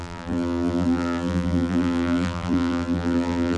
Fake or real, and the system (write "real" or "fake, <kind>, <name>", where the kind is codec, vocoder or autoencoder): fake, vocoder, BigVGAN v2